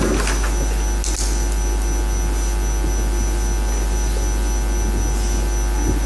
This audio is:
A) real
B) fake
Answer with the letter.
A